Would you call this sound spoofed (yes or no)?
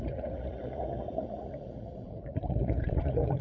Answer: yes